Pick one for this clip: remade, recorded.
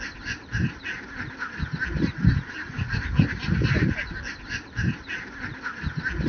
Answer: recorded